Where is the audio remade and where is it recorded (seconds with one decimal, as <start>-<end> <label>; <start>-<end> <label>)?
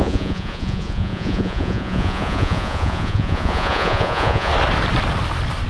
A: 0.0-4.5 remade; 4.5-5.7 recorded